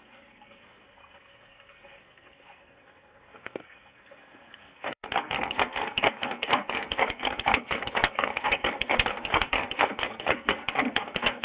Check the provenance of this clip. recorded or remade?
remade